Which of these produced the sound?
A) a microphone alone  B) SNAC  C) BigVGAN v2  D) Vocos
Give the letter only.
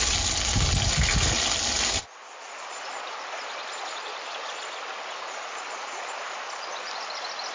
A